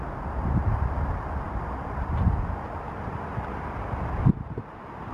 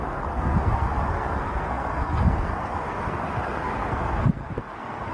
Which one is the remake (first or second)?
second